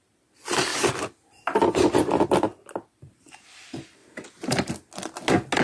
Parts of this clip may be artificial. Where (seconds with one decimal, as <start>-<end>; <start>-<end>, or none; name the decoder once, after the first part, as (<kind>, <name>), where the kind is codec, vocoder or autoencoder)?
4.0-4.7 (vocoder, BigVGAN v2)